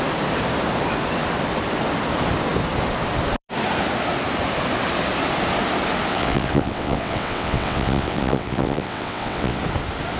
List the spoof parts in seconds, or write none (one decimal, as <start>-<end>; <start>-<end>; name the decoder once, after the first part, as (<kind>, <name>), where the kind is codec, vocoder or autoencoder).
6.1-9.6 (vocoder, WaveNeXt)